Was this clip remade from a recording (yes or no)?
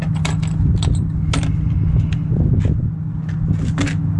no